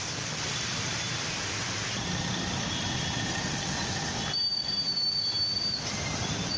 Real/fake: real